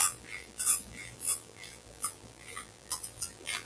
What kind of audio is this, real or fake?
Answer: fake